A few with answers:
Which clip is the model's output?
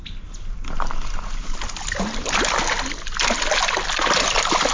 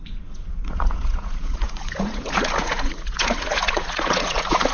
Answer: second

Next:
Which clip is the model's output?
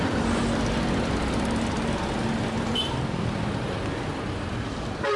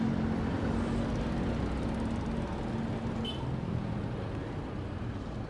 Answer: first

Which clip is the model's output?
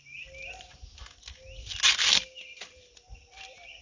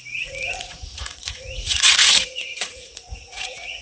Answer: second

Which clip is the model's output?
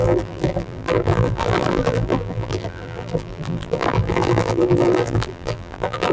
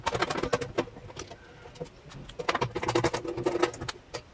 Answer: first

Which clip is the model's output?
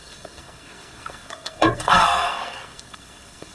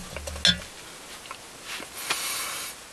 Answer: first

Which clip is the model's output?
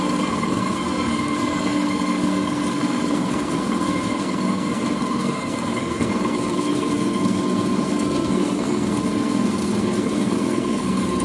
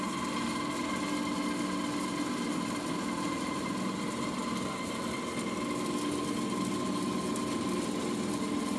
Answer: first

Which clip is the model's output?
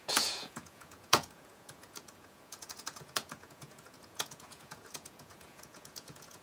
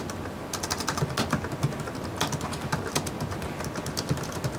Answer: first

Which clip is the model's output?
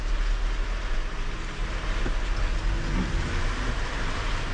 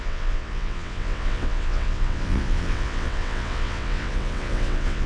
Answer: second